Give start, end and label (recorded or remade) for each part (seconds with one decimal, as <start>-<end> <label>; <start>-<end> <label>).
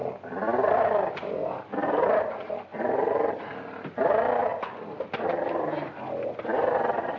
0.0-2.7 recorded; 2.7-4.0 remade; 4.0-4.5 recorded; 4.5-5.9 remade; 5.9-7.2 recorded